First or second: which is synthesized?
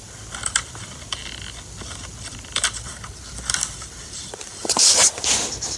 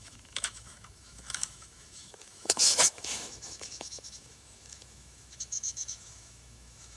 second